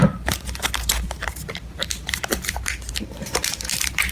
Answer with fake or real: fake